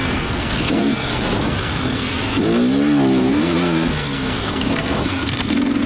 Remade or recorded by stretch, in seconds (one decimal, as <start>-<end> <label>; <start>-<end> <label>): 0.0-2.4 remade; 2.4-3.2 recorded; 3.2-5.9 remade